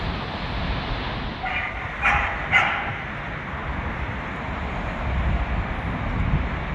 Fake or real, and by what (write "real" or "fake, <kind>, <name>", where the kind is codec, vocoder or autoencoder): real